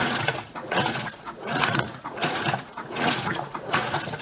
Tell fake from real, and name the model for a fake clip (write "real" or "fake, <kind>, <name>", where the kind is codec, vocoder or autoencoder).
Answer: fake, vocoder, Vocos